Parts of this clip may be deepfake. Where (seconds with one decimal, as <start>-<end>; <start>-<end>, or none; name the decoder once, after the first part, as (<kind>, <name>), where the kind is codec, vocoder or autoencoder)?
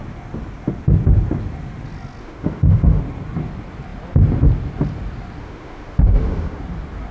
2.2-3.0 (autoencoder, DAC-VAE); 5.4-6.6